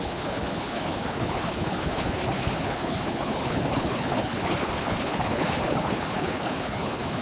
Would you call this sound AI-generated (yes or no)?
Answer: yes